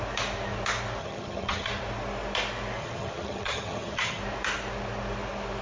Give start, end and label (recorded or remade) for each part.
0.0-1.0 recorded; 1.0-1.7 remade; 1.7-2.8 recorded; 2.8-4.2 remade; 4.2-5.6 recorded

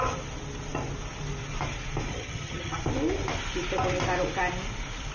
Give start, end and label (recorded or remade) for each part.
0.0-2.1 recorded; 2.1-2.8 remade; 2.8-5.1 recorded